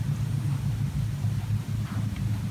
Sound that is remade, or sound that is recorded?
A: recorded